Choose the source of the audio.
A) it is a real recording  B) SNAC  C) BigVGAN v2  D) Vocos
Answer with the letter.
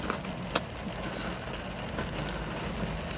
A